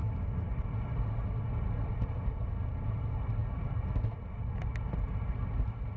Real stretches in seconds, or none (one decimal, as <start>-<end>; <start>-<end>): 0.0-6.0